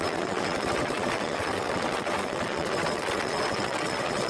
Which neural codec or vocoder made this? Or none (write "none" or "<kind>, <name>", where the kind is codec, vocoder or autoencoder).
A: vocoder, WaveNeXt